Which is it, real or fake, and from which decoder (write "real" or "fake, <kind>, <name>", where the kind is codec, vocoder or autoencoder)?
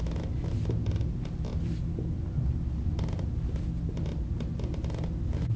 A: real